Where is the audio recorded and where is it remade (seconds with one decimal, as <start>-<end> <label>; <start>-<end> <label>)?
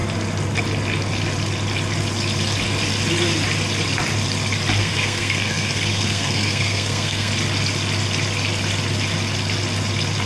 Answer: 0.0-4.8 recorded; 4.8-7.3 remade; 7.3-10.3 recorded